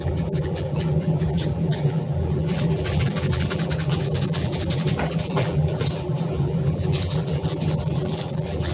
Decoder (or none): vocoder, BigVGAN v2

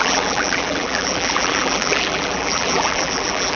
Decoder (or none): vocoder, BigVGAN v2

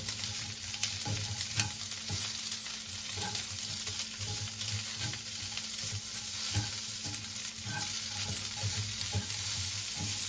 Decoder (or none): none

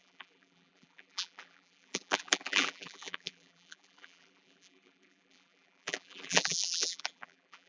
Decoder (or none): vocoder, BigVGAN v2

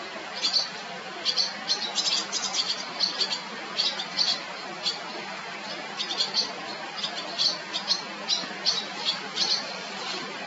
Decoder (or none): none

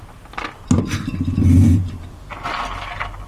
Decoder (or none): none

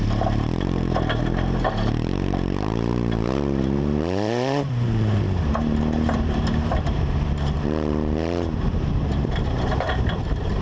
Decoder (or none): vocoder, BigVGAN v2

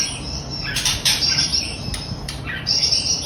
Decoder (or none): vocoder, BigVGAN v2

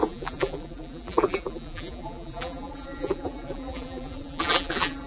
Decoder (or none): vocoder, BigVGAN v2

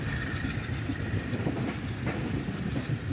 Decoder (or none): vocoder, BigVGAN v2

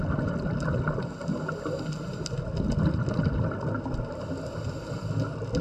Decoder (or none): none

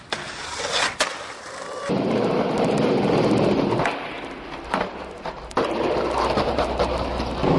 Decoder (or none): none